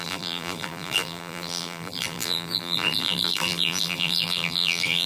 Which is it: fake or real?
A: fake